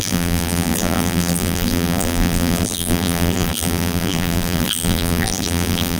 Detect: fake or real fake